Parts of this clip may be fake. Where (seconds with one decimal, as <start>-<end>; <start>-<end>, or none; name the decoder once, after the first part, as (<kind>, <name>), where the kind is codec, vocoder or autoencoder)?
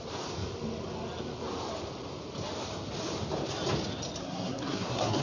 4.2-5.2 (codec, SNAC)